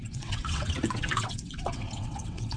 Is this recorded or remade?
remade